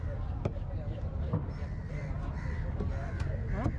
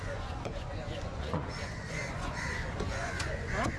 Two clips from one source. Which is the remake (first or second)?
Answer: second